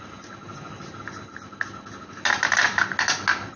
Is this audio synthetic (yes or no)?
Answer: no